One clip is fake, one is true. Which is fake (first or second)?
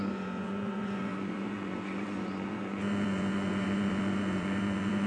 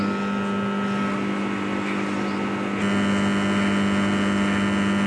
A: first